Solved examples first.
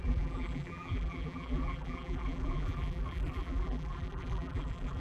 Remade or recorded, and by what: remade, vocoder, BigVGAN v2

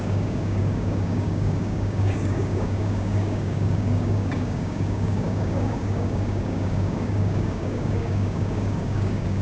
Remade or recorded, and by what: remade, codec, DAC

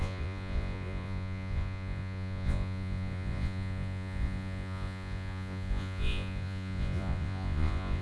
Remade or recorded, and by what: remade, vocoder, Vocos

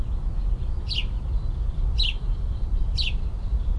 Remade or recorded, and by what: recorded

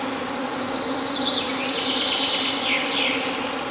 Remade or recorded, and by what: recorded